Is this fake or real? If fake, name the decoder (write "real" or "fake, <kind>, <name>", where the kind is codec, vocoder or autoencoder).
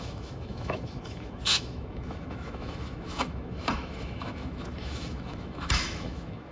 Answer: fake, autoencoder, DAC-VAE